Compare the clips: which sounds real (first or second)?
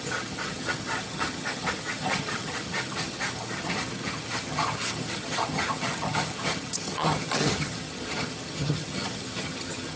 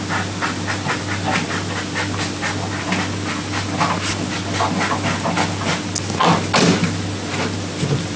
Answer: second